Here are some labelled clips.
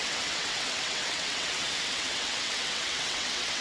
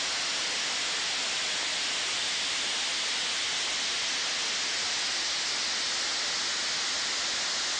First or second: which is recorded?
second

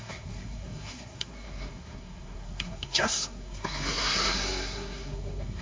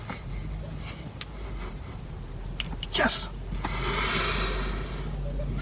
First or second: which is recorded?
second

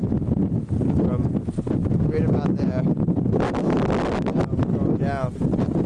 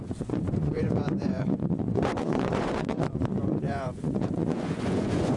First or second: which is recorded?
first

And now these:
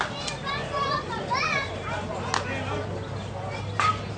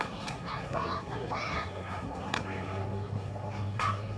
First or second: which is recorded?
first